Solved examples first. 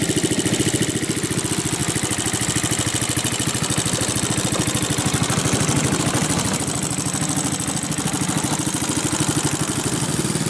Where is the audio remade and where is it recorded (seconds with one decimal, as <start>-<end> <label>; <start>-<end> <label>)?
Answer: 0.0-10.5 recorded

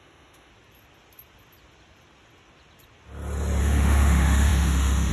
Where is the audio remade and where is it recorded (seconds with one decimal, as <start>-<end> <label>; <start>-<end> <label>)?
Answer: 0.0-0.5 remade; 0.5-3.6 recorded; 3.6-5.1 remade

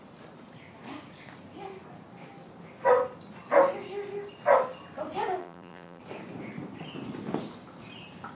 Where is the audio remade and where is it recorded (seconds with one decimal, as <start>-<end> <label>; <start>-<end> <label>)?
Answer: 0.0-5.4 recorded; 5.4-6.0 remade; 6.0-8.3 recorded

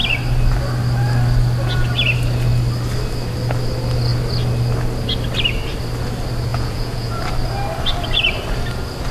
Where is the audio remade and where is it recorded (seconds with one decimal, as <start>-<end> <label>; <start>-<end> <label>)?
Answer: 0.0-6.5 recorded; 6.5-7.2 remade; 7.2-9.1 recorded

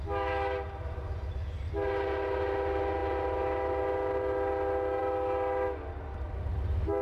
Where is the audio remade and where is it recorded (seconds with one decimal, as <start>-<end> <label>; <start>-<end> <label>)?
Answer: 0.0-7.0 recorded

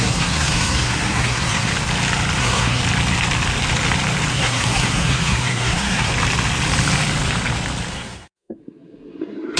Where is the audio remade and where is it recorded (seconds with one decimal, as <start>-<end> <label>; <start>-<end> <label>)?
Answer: 0.0-1.7 remade; 1.7-2.4 recorded; 2.4-2.8 remade; 2.8-4.3 recorded; 4.3-6.1 remade; 6.1-7.9 recorded; 7.9-9.6 remade